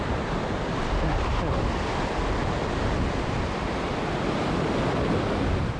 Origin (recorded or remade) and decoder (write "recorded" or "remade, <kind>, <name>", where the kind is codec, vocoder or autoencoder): recorded